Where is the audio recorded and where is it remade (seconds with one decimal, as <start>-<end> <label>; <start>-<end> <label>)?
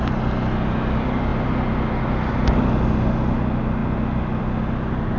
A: 0.0-5.2 recorded